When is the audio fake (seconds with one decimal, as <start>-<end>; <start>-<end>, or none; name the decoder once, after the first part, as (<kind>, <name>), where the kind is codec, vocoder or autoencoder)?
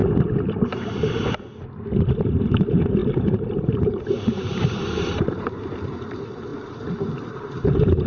2.3-8.1 (vocoder, BigVGAN v2)